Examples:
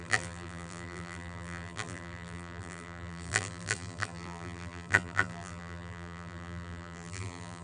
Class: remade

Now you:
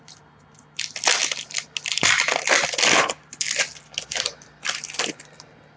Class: recorded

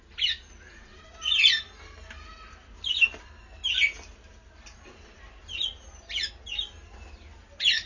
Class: recorded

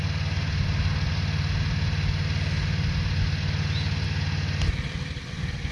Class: recorded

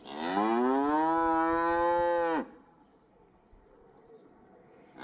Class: recorded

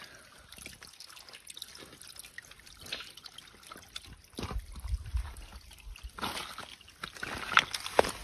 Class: recorded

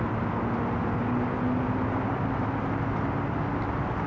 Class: recorded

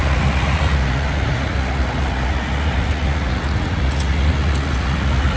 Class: remade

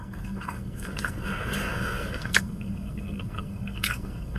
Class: remade